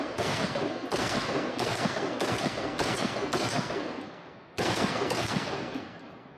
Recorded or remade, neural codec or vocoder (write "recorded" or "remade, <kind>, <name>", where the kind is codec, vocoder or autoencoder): remade, codec, SNAC